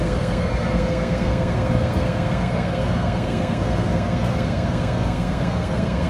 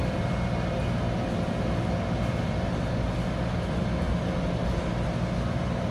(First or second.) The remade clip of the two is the first